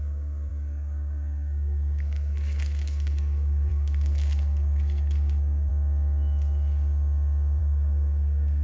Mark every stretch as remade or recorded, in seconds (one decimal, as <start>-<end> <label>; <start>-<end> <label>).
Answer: 0.0-5.7 remade; 5.7-7.6 recorded; 7.6-8.6 remade